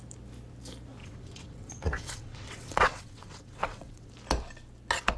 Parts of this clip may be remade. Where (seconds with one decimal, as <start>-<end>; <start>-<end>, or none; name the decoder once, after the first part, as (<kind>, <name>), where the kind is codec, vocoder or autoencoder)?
1.0-4.1 (vocoder, WaveNeXt)